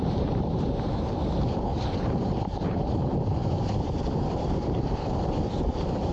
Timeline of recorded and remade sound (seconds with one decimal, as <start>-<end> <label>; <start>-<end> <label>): 0.0-6.1 remade